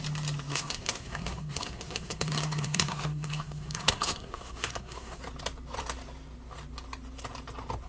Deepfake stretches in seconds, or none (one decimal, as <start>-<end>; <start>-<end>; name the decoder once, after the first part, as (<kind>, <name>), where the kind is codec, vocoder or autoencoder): 0.5-5.2 (codec, SNAC)